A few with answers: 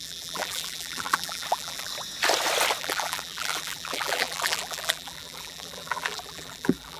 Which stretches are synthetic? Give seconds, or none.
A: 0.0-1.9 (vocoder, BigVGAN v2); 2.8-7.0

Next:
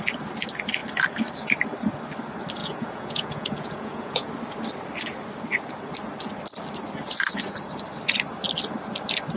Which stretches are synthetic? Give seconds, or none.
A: 2.6-4.3 (vocoder, Vocos)

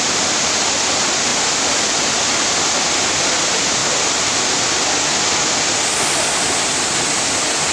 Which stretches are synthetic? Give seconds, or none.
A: 1.3-2.2 (vocoder, BigVGAN v2); 3.8-4.7

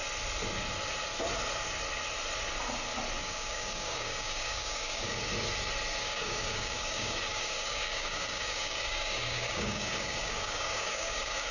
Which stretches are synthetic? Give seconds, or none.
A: 3.2-5.2 (codec, DAC); 6.0-11.5

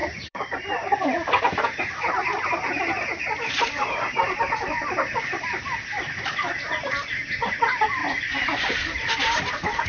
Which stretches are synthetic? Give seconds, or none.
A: 0.0-1.4 (vocoder, BigVGAN v2); 8.0-9.4

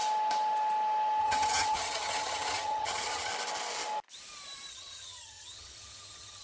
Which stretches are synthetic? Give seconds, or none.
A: 1.2-3.3 (vocoder, HiFi-GAN); 4.7-6.4